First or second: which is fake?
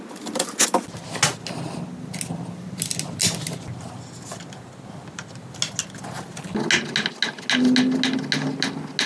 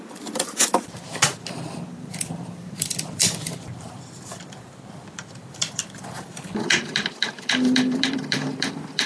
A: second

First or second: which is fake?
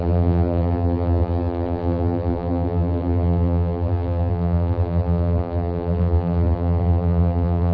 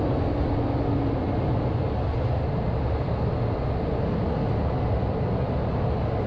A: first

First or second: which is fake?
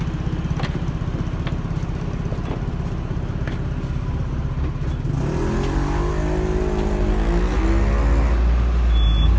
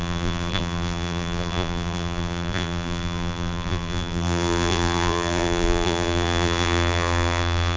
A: second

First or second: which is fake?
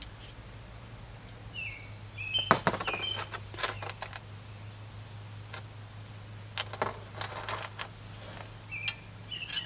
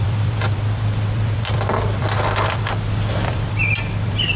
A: second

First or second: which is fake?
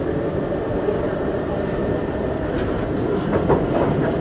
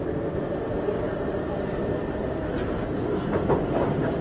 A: first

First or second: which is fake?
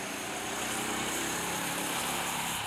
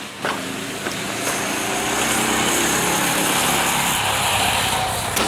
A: first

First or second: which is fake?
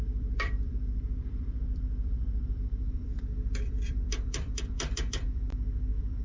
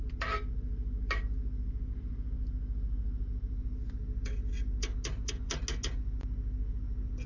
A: first